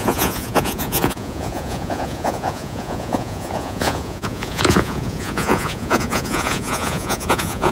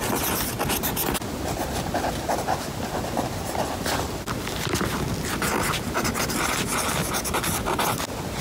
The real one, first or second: second